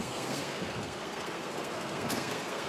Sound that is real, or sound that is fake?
fake